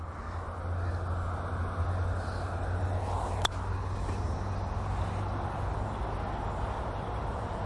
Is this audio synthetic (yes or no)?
no